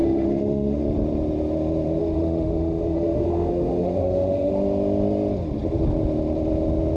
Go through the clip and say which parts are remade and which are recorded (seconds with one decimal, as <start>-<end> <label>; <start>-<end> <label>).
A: 0.0-0.8 remade; 0.8-2.0 recorded; 2.0-4.5 remade; 4.5-7.0 recorded